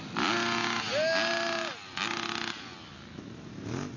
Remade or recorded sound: recorded